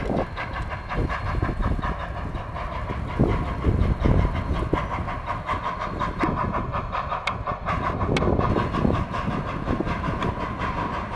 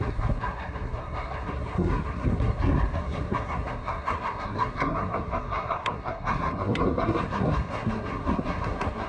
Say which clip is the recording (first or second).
first